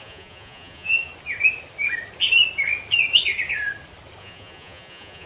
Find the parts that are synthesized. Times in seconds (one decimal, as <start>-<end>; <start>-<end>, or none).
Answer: 0.0-1.1; 4.2-5.3